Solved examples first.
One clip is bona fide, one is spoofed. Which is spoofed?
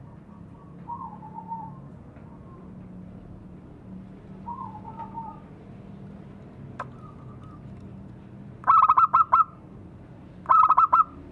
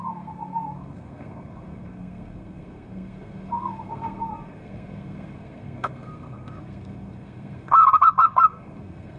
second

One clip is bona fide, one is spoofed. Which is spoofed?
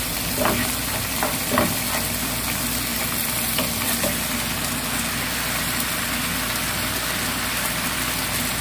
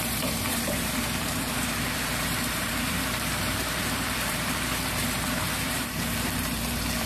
second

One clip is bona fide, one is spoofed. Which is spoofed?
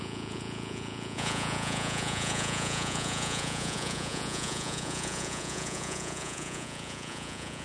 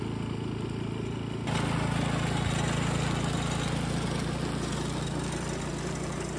first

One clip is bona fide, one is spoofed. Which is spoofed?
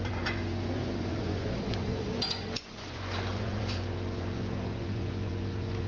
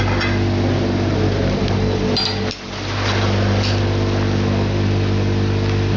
first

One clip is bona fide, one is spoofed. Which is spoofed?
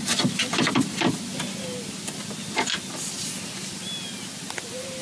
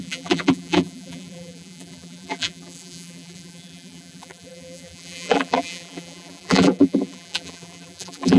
second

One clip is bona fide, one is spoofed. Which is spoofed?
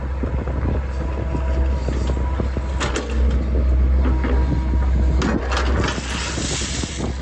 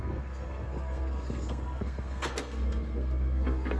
second